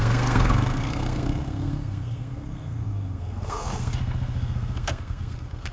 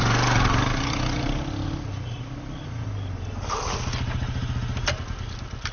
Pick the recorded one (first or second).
second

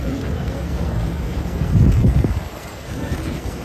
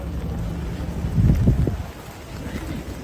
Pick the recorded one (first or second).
second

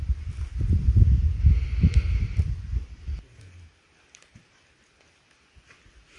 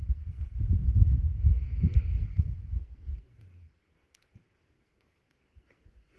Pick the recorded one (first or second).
first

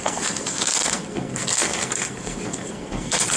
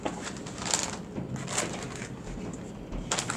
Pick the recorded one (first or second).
second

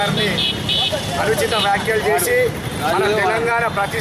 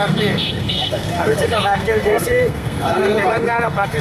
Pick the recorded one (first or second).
first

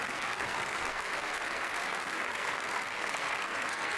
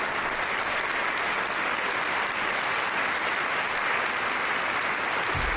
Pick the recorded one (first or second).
second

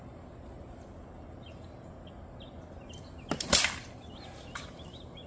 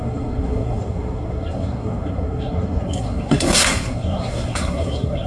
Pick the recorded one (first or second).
first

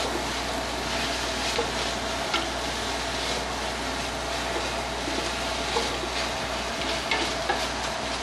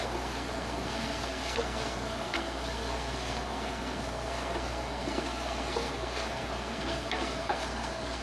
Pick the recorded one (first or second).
first